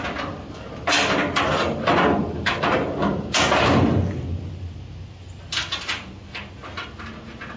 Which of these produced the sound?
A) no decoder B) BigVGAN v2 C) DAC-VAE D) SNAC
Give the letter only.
A